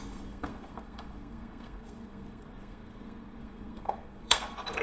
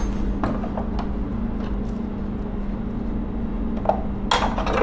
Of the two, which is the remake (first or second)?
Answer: first